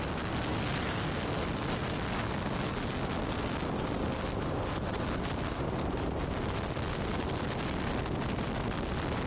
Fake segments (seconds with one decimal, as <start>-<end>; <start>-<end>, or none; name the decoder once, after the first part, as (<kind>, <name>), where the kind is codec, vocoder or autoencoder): none